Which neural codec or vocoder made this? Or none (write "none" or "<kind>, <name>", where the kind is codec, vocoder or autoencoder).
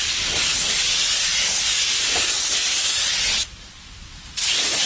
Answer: none